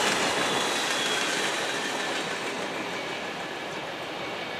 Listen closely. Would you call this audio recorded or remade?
recorded